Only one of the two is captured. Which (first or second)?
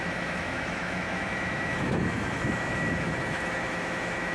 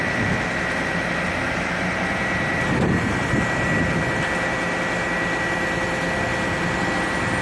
second